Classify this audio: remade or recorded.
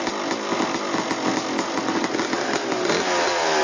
recorded